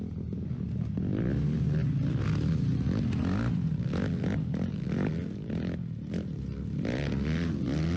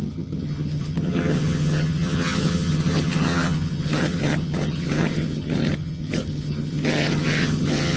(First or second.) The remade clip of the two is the second